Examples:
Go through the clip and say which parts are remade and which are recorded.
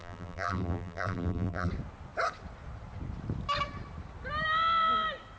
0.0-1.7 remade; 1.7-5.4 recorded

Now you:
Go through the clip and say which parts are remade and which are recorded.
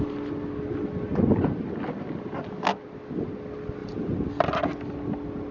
0.0-3.8 recorded; 3.8-4.3 remade; 4.3-5.5 recorded